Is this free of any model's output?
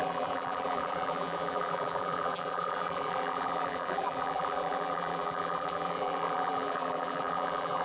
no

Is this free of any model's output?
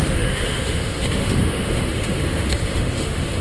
no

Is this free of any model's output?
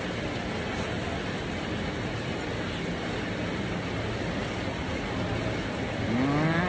yes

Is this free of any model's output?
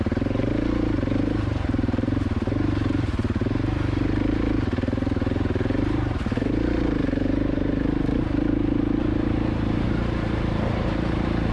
no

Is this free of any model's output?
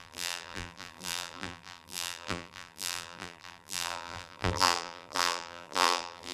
no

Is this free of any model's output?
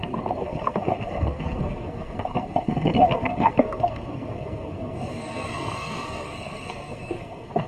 no